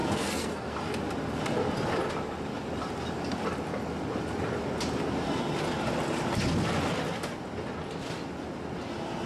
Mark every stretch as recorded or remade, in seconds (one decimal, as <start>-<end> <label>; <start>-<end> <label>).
0.0-0.9 remade; 0.9-9.3 recorded